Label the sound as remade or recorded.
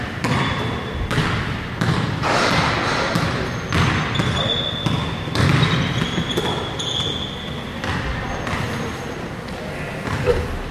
recorded